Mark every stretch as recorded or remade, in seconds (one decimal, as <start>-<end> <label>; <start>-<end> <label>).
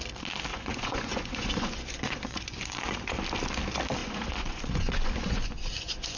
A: 0.0-0.5 recorded; 0.5-2.8 remade; 2.8-4.0 recorded; 4.0-6.2 remade